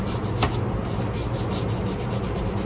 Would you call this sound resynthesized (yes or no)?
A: no